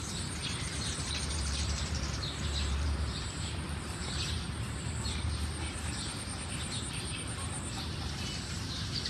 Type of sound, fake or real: fake